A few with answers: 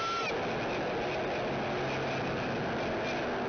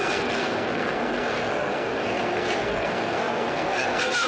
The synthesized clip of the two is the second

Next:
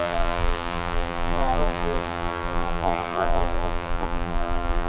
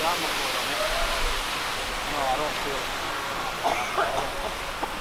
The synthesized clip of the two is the first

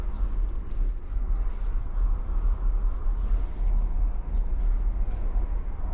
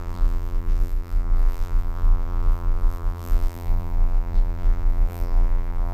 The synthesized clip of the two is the second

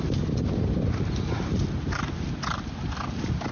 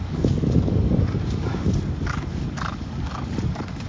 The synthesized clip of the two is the second